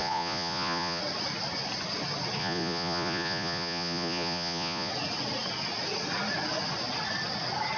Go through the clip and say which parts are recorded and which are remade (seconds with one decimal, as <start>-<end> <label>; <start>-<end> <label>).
0.0-1.0 remade; 1.0-2.4 recorded; 2.4-4.9 remade; 4.9-7.8 recorded